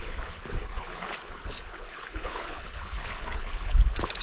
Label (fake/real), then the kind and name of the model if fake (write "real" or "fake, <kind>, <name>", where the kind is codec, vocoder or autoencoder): fake, codec, HILCodec